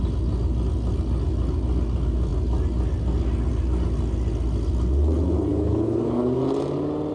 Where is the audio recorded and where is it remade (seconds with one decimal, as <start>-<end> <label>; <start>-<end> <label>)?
0.0-5.5 recorded; 5.5-6.4 remade; 6.4-7.1 recorded